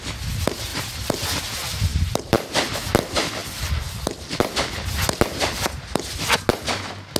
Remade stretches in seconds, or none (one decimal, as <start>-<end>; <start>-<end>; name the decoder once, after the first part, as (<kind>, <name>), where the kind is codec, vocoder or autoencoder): 0.7-1.4 (vocoder, BigVGAN v2); 1.9-2.8; 3.4-4.5